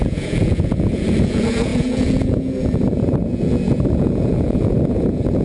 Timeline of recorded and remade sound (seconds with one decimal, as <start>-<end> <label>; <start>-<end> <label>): 0.0-5.4 remade